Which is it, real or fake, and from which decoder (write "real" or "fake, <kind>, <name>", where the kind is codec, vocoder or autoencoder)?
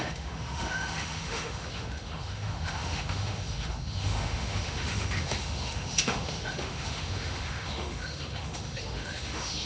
fake, autoencoder, DAC-VAE